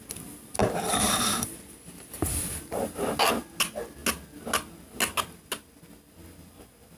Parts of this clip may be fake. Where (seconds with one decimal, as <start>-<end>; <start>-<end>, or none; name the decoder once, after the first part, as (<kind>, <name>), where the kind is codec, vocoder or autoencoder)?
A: none